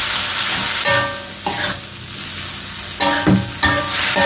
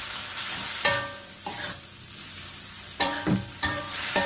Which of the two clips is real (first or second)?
first